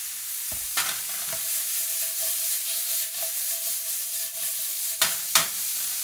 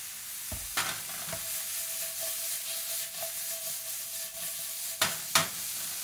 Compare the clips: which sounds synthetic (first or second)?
first